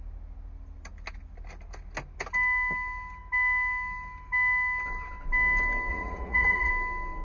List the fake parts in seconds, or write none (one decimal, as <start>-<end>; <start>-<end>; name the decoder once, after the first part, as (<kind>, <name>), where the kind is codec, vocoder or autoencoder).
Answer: 5.9-6.7 (vocoder, Vocos)